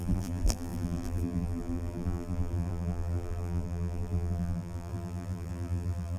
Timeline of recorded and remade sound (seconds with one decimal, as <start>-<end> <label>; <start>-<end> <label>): 0.0-6.2 remade